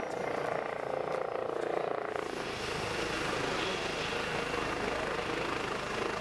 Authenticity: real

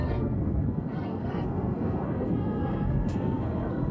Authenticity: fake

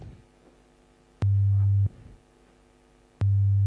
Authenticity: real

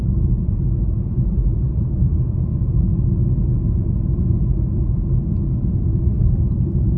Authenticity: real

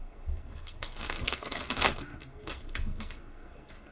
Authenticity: fake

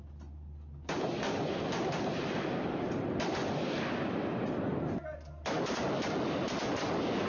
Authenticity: real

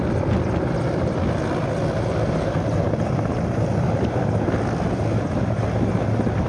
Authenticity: real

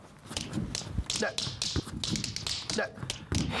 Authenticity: real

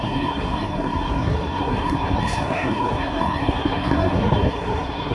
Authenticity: fake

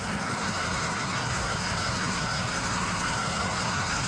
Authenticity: fake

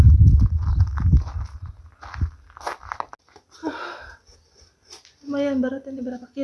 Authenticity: real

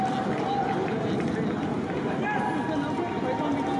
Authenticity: real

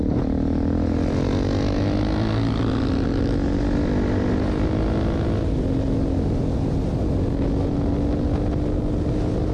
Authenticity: real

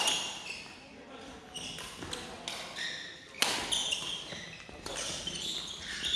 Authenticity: real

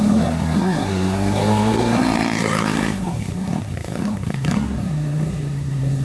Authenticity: fake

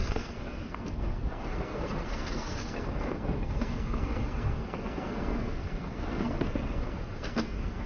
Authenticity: fake